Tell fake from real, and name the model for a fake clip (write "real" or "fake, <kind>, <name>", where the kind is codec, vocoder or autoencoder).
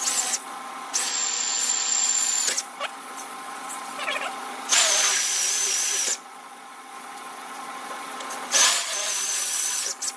fake, vocoder, Vocos